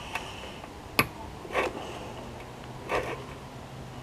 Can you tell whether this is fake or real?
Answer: real